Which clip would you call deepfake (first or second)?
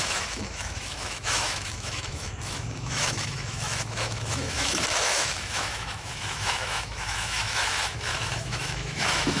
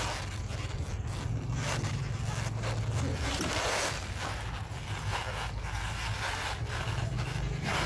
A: first